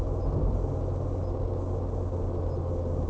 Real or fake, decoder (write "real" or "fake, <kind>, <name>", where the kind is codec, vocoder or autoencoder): real